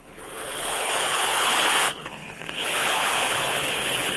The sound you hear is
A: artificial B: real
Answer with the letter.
A